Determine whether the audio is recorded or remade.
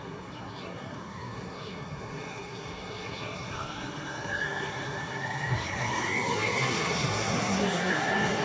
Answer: remade